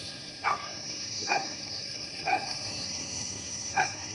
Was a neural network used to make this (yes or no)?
yes